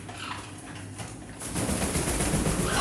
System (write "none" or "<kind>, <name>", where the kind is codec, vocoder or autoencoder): none